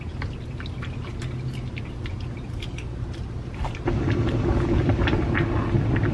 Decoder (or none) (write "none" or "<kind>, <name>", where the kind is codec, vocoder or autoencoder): none